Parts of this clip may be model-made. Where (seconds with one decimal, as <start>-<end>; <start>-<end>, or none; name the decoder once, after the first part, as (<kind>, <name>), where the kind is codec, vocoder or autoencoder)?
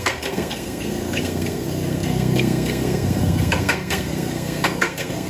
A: 0.0-5.3 (codec, SNAC)